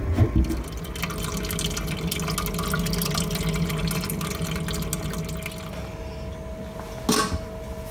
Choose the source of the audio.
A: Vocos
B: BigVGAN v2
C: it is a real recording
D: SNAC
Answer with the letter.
C